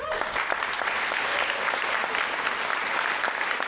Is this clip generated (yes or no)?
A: no